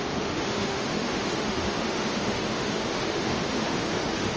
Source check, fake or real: fake